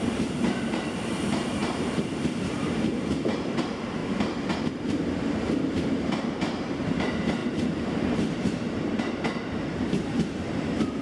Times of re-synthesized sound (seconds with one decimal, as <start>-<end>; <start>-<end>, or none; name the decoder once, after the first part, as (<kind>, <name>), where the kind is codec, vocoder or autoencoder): 0.0-4.0 (vocoder, BigVGAN v2); 4.7-11.0